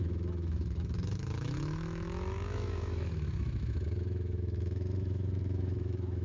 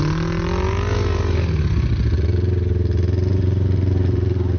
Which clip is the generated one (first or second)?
first